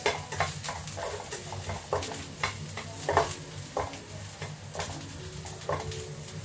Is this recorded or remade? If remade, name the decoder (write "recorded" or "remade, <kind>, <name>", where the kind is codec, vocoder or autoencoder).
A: recorded